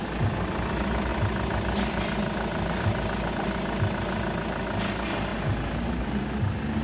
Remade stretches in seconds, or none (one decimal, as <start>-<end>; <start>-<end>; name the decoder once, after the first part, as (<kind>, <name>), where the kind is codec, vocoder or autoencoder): none